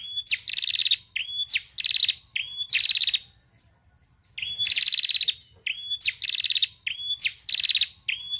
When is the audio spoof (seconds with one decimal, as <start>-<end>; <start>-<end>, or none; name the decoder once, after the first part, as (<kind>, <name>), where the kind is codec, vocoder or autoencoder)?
none